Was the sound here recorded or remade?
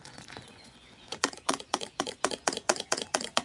remade